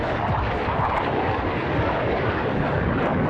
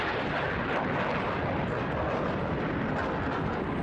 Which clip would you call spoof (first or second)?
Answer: first